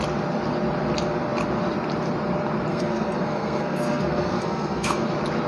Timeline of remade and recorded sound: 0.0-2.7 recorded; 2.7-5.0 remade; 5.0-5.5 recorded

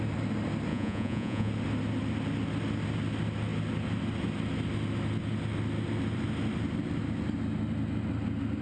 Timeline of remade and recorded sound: 0.0-0.7 recorded; 0.7-1.5 remade; 1.5-8.6 recorded

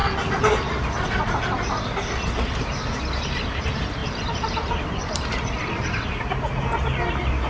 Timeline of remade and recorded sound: 0.0-3.6 remade; 3.6-4.0 recorded; 4.0-5.9 remade; 5.9-7.5 recorded

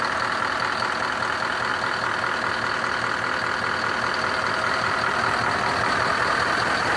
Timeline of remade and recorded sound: 0.0-7.0 recorded

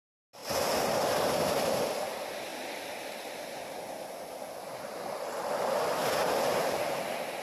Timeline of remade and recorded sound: 0.0-7.4 recorded

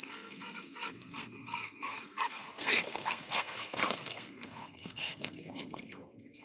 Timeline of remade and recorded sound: 0.0-6.4 remade

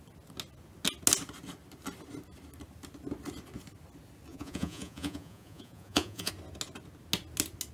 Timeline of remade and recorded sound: 0.0-4.3 recorded; 4.3-6.3 remade; 6.3-7.7 recorded